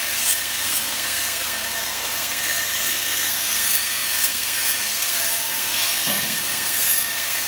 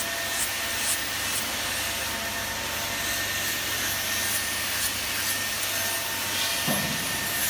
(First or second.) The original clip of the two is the second